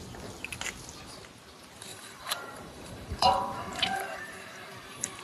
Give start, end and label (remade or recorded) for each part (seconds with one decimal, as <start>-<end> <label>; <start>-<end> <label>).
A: 0.0-1.9 recorded; 1.9-5.2 remade

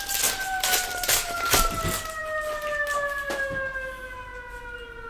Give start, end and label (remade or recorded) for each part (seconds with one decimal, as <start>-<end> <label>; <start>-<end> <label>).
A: 0.0-0.4 recorded; 0.4-1.8 remade; 1.8-5.1 recorded